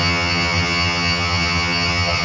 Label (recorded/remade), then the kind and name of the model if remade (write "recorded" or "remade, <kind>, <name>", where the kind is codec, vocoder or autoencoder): remade, vocoder, HiFi-GAN